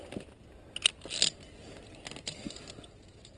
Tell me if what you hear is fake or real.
real